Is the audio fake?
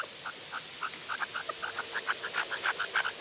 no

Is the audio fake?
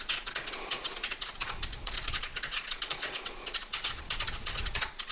yes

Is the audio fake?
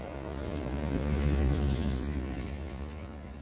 yes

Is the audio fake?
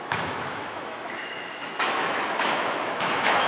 yes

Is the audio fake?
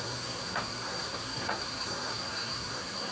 yes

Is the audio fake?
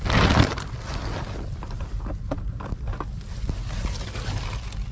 no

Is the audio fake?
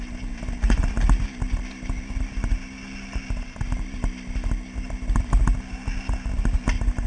no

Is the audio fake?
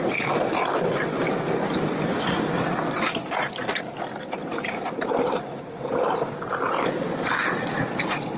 no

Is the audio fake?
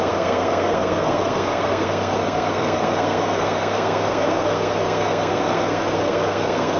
yes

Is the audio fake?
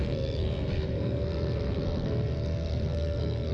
yes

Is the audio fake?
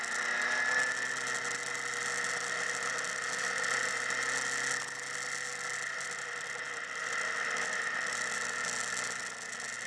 no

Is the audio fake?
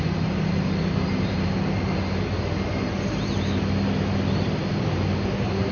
no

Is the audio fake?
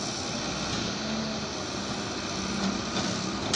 no